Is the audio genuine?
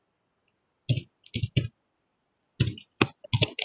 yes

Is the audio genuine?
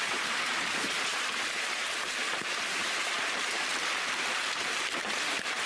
no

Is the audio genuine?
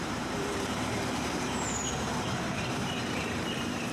no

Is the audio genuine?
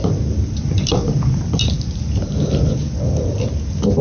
yes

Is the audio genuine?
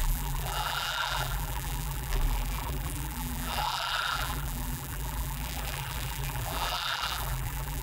no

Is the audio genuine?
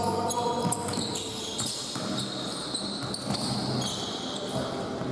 yes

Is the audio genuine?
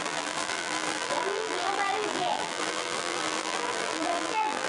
no